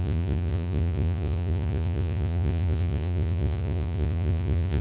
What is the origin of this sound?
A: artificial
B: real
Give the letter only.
A